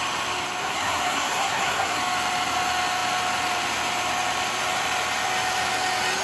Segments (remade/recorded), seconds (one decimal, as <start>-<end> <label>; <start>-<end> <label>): 0.0-0.6 recorded; 0.6-2.0 remade; 2.0-6.2 recorded